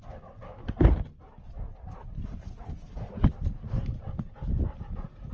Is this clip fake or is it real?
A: real